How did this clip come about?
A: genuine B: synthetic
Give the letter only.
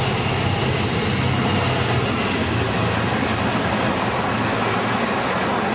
A